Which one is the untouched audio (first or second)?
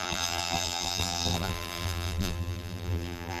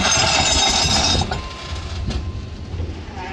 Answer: second